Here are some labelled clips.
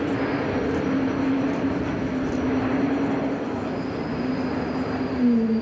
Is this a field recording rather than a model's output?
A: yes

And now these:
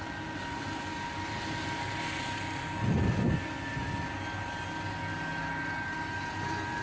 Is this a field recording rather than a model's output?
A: yes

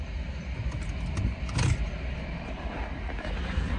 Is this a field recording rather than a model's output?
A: yes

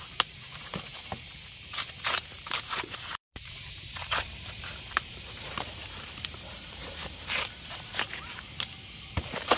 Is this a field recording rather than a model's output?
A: no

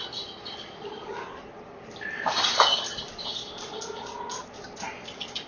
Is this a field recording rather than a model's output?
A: yes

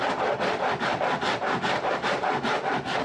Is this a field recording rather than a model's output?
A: yes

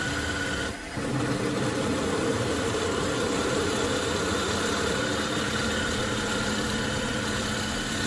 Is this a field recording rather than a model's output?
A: yes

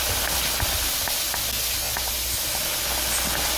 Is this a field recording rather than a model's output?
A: yes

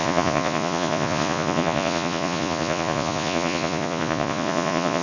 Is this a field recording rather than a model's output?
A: no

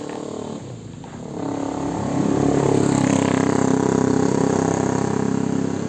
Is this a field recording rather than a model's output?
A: yes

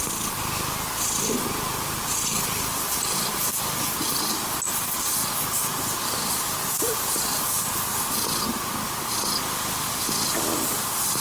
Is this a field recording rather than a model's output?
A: yes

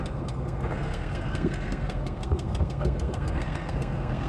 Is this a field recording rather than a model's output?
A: no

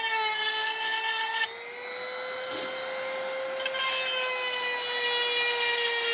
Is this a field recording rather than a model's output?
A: yes